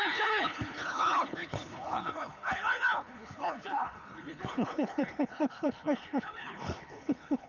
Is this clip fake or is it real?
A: fake